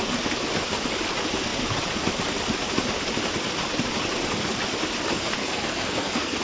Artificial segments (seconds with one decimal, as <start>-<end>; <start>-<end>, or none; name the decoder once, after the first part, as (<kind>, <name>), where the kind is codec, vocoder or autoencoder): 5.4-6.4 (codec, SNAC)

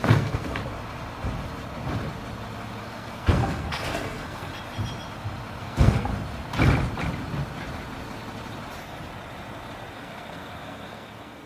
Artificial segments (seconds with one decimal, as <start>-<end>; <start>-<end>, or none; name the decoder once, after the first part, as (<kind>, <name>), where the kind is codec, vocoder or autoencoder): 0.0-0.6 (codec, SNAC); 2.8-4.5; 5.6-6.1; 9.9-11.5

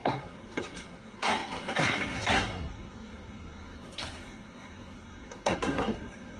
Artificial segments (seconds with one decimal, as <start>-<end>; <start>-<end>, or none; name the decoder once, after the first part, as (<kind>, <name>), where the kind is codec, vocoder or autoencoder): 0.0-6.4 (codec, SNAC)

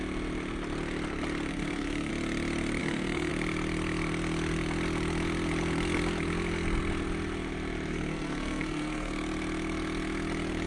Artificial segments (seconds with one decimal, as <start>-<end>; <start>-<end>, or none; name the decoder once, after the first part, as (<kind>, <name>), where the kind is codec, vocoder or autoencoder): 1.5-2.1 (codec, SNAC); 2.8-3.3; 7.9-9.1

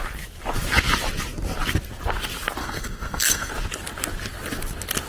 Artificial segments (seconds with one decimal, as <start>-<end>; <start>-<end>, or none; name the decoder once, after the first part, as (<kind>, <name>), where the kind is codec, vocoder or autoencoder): 2.6-3.5 (codec, SNAC)

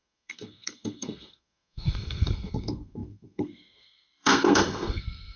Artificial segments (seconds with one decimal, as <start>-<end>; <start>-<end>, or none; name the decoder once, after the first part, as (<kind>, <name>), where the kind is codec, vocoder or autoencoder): 0.0-5.4 (codec, SNAC)

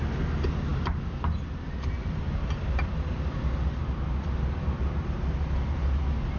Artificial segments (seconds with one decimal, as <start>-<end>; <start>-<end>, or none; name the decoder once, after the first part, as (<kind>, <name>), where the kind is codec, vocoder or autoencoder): none

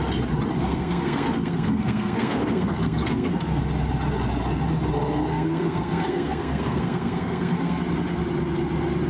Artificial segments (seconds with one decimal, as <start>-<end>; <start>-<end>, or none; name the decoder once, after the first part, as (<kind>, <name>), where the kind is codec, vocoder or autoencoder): 0.6-3.6 (codec, SNAC); 5.3-7.8